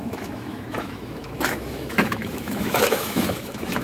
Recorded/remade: remade